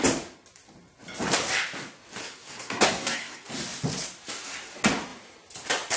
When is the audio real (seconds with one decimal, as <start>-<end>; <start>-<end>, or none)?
0.0-2.2; 3.5-6.0